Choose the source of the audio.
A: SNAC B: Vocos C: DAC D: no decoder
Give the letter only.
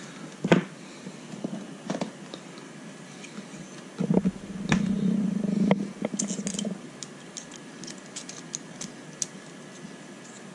D